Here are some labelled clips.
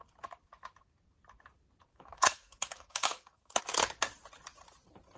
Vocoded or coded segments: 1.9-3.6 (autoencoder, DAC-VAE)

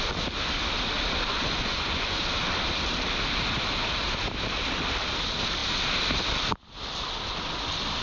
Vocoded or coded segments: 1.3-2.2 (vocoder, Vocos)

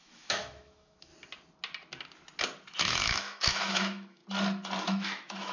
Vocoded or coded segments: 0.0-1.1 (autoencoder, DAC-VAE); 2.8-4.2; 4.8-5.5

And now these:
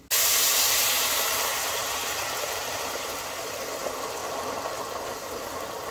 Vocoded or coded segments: 0.5-3.2 (vocoder, BigVGAN v2)

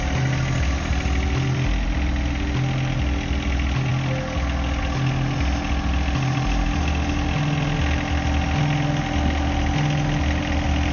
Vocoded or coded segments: none